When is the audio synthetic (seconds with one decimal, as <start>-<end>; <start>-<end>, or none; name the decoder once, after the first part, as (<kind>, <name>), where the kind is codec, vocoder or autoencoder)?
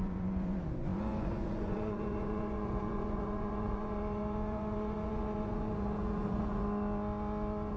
0.0-6.6 (vocoder, Vocos)